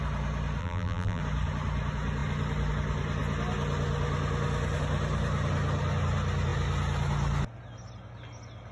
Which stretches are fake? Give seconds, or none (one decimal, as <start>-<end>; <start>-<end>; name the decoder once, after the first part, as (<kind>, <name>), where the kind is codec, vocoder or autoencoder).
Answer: 0.6-1.2 (vocoder, BigVGAN v2)